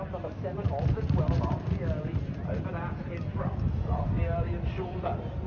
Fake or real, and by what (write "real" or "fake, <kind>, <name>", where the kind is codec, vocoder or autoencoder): real